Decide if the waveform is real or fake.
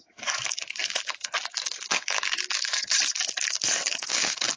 fake